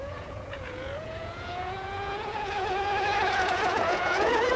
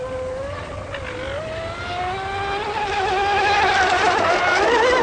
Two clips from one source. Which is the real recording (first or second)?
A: second